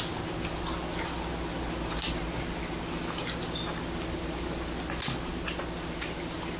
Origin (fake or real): real